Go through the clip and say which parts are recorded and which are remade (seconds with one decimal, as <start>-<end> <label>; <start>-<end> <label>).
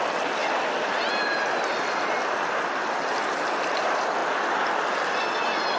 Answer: 0.0-5.8 recorded